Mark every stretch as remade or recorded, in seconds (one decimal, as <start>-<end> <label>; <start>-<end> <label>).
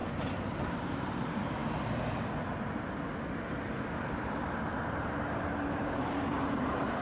0.0-0.8 recorded; 0.8-1.6 remade; 1.6-4.7 recorded; 4.7-7.0 remade